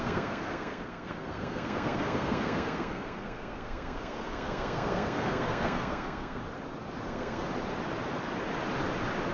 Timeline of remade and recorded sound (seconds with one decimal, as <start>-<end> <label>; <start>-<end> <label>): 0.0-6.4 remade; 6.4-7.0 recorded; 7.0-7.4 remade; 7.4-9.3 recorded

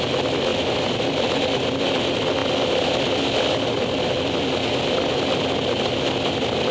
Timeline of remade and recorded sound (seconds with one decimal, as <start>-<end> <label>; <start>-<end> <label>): 0.0-6.7 recorded

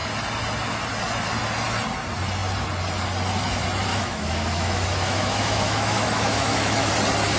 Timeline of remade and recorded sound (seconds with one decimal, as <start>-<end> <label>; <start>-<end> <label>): 0.0-3.9 recorded; 3.9-6.9 remade; 6.9-7.4 recorded

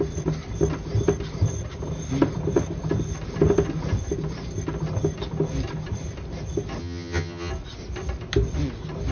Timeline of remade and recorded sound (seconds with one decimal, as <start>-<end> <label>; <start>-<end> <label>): 0.0-6.8 recorded; 6.8-7.5 remade; 7.5-9.1 recorded

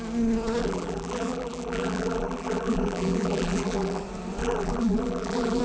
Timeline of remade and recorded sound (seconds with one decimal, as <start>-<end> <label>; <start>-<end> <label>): 0.0-0.6 recorded; 0.6-4.0 remade; 4.0-4.4 recorded; 4.4-5.6 remade

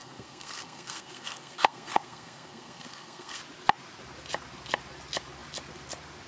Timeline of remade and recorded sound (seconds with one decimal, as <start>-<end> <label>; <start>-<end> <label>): 0.0-3.4 remade; 3.4-6.3 recorded